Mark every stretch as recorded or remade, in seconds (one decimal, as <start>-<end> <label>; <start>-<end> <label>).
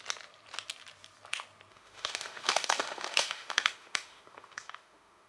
0.0-1.7 recorded; 1.7-5.3 remade